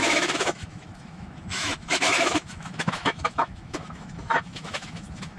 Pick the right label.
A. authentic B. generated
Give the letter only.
B